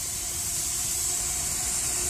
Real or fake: fake